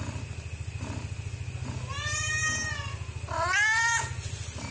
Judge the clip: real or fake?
real